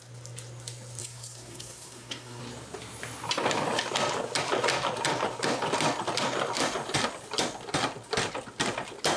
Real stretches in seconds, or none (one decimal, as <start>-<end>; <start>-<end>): 0.0-1.0; 2.4-9.2